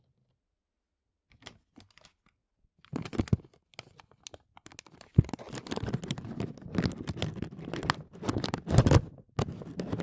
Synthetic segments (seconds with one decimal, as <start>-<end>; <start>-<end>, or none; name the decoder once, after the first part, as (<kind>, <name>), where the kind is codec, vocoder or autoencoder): none